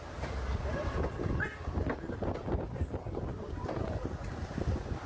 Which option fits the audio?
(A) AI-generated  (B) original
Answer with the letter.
B